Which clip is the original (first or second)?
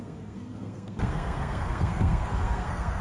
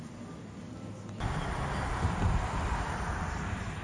second